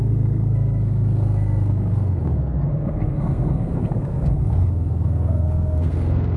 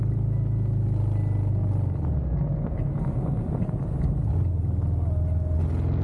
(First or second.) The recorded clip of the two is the second